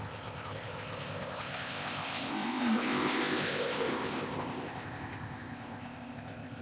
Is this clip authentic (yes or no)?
no